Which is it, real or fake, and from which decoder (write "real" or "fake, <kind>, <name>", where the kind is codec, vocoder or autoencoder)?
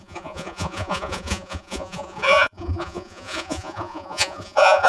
fake, vocoder, Vocos